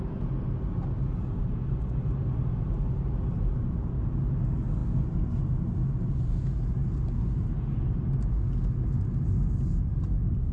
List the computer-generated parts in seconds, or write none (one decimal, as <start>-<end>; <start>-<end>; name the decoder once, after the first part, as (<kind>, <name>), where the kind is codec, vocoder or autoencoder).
none